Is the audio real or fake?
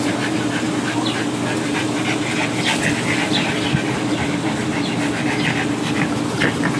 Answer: real